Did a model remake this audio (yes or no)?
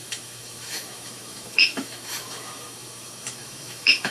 yes